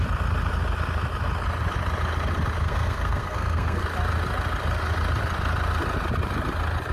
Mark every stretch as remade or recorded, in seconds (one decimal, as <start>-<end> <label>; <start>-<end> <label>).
0.0-2.6 recorded; 2.6-3.8 remade; 3.8-6.9 recorded